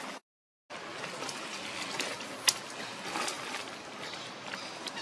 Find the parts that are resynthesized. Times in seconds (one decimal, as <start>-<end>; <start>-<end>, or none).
none